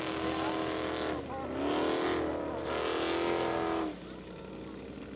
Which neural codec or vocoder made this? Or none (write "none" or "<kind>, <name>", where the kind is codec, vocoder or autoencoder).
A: none